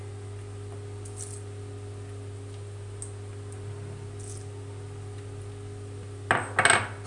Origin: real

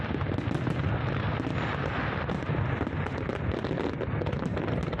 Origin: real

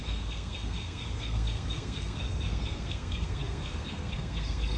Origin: fake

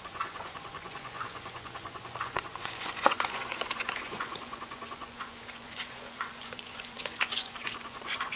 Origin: fake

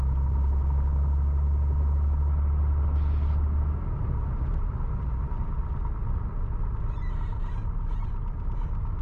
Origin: real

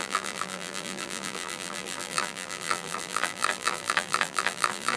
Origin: fake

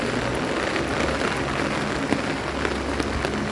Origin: real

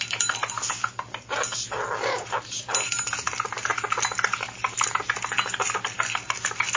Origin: real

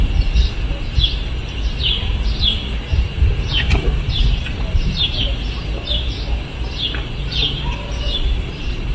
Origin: fake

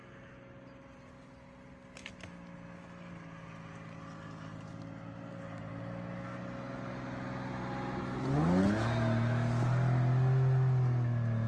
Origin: real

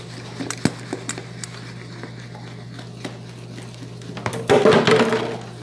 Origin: real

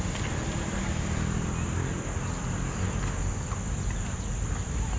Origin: real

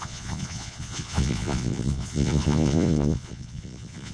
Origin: fake